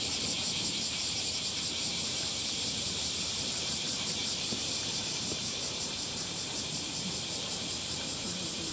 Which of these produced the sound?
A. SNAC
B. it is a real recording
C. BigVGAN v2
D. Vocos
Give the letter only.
C